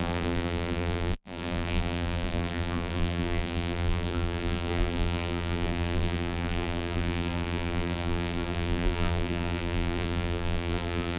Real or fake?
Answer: fake